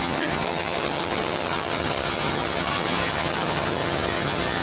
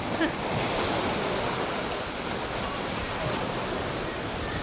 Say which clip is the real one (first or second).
second